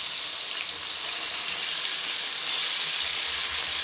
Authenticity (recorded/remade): recorded